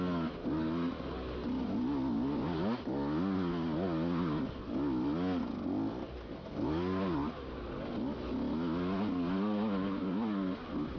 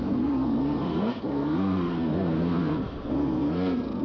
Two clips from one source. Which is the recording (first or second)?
first